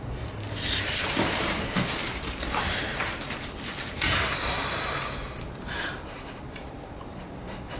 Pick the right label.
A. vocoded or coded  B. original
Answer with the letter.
A